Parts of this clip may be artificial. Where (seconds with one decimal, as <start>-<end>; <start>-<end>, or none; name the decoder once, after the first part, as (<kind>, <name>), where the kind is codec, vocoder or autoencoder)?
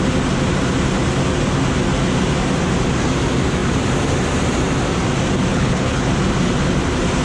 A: 5.5-6.1 (codec, HILCodec)